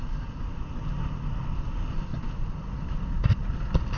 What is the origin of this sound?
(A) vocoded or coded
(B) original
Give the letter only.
A